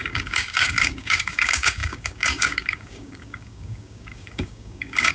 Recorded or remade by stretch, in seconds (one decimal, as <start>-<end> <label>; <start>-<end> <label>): 0.0-5.1 remade